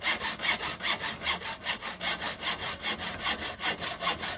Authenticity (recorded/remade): recorded